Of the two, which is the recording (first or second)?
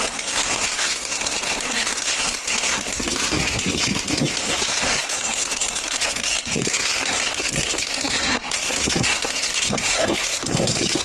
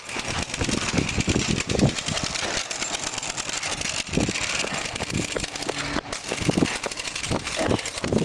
second